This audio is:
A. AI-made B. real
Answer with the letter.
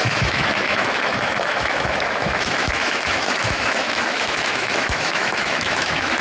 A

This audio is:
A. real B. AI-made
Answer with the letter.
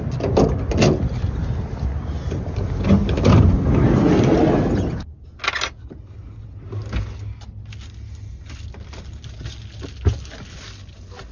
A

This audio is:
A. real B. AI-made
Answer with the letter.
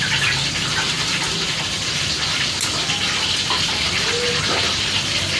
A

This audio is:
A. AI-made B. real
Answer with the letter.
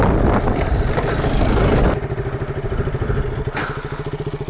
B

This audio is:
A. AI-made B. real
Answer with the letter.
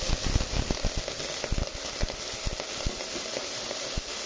B